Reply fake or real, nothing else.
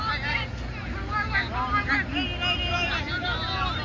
real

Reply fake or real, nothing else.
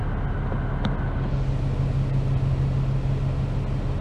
real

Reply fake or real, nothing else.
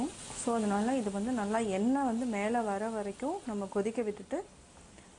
real